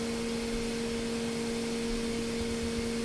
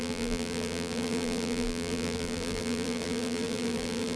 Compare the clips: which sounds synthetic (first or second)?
second